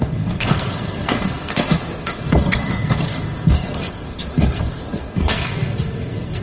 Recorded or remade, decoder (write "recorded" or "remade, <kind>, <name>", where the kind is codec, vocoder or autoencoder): remade, codec, SNAC